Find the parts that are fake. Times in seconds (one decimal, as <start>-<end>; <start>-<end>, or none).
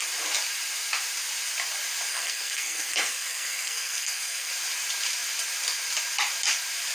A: 2.1-4.5